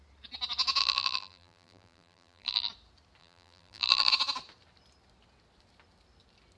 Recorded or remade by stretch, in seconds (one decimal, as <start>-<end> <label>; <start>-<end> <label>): 0.0-0.8 recorded; 0.8-2.7 remade; 2.7-3.2 recorded; 3.2-4.1 remade; 4.1-6.6 recorded